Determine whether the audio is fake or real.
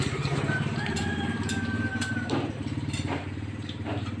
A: fake